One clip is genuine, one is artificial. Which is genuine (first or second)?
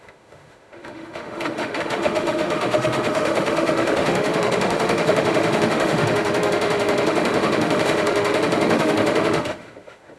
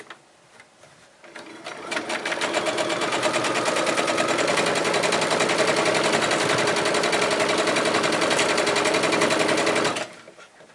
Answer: second